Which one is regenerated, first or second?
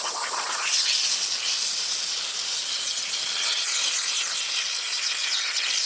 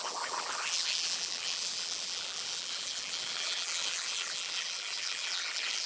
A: second